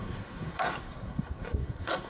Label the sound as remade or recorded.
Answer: remade